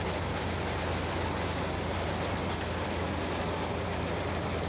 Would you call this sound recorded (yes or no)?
yes